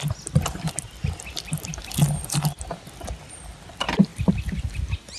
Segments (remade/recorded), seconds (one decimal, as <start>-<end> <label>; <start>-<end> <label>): 0.0-5.2 recorded